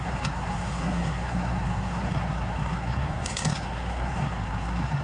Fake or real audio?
fake